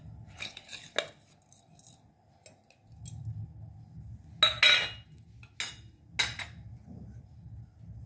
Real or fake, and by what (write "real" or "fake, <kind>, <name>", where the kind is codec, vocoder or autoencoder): real